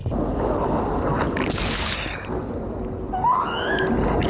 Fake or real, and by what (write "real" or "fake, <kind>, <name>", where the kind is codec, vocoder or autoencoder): real